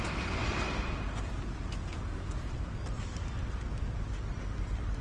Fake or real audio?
real